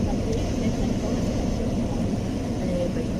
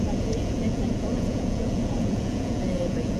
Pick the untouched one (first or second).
first